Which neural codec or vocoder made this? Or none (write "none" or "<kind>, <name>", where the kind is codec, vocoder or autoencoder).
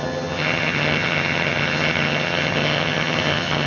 vocoder, HiFi-GAN